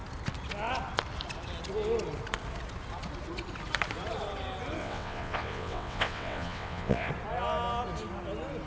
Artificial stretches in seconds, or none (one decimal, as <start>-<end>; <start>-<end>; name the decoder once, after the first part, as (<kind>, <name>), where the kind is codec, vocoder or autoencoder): 4.8-7.1 (vocoder, WaveNeXt)